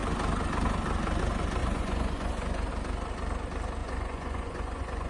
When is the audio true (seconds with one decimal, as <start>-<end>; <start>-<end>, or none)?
0.0-1.6; 2.7-3.8